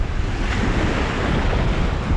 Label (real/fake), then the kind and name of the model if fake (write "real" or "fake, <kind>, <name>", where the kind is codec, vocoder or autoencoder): real